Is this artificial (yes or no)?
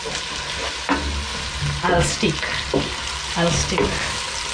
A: no